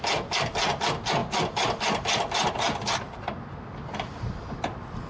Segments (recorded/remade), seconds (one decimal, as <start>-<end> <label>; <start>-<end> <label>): 0.0-5.1 recorded